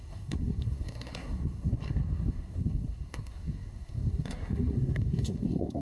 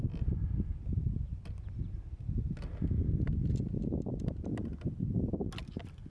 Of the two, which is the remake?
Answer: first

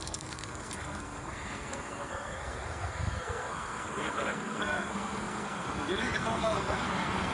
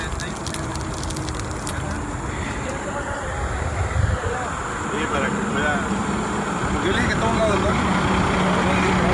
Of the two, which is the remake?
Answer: first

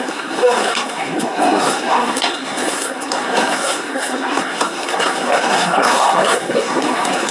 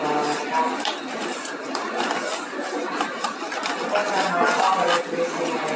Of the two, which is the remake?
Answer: first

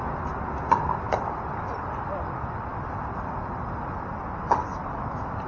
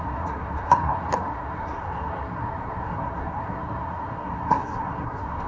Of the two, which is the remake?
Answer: second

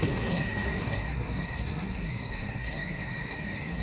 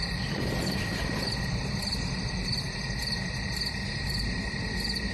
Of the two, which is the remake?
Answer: first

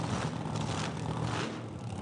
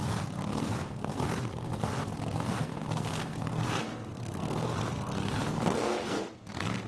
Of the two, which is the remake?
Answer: second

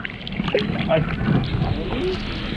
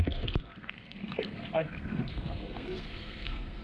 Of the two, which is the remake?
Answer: second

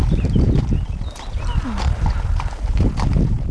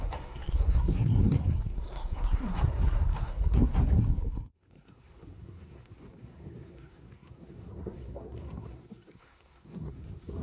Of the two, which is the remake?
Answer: second